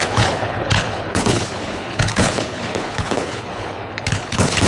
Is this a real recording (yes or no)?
no